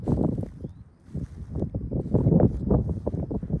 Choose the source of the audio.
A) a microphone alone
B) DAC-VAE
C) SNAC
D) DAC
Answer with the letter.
A